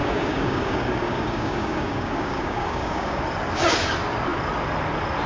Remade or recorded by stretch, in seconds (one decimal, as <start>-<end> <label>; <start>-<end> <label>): 0.0-3.2 remade; 3.2-5.3 recorded